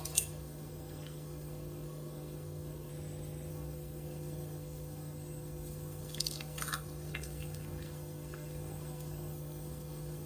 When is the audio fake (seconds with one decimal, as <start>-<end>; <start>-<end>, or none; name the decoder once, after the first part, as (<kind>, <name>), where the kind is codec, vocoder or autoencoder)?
0.0-2.9 (codec, SNAC); 3.5-10.3